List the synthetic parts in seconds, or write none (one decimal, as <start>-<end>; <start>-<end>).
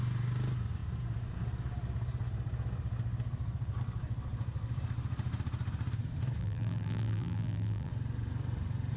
6.4-7.9